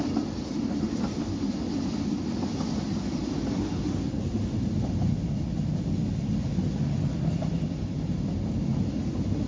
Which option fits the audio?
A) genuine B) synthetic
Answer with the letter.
A